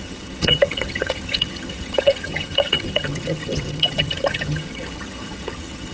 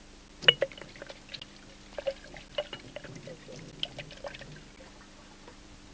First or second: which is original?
second